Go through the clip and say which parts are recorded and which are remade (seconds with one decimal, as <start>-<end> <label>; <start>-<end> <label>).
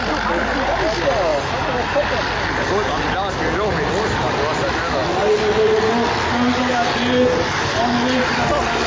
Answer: 0.0-8.9 recorded